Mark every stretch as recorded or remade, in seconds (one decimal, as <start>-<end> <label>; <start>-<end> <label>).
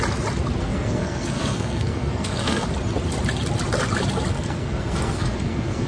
0.0-0.6 recorded; 0.6-2.7 remade; 2.7-4.3 recorded; 4.3-5.9 remade